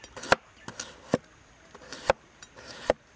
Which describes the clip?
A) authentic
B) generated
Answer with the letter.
A